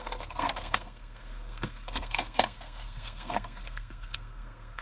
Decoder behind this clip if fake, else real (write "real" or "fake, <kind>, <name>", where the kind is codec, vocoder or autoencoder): fake, codec, SNAC